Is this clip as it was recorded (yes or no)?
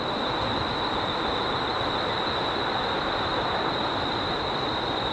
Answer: yes